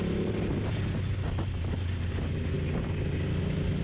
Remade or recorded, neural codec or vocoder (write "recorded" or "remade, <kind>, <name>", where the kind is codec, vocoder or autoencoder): recorded